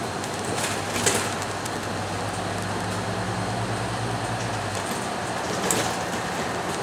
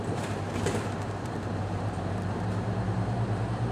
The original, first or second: first